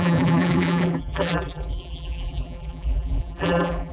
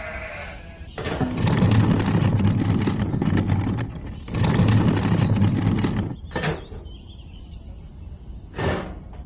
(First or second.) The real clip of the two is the second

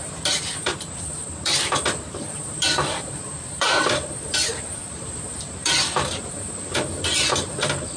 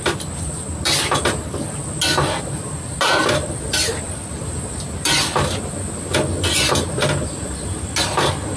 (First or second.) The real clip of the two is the second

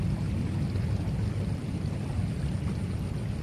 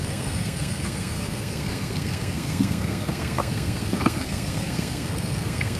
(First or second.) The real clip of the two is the first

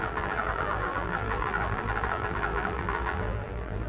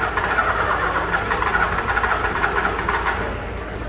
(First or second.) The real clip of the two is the second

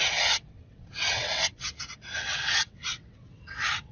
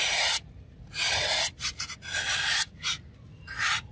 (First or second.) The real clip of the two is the second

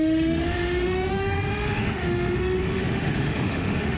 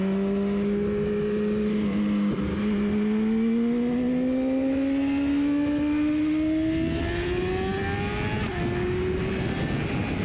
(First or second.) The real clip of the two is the second